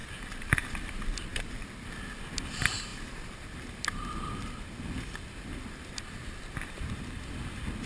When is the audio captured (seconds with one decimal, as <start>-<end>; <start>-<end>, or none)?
0.7-1.3; 2.2-2.9; 5.9-7.9